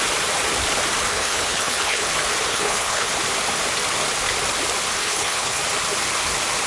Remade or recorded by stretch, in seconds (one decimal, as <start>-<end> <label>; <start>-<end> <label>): 0.0-1.1 recorded; 1.1-2.1 remade; 2.1-2.5 recorded; 2.5-3.1 remade; 3.1-5.0 recorded; 5.0-5.6 remade; 5.6-6.7 recorded